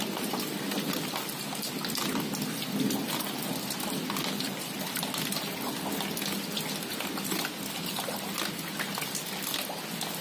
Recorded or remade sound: recorded